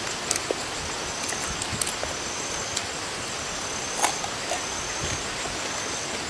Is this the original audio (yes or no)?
yes